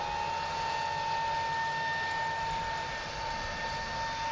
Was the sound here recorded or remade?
recorded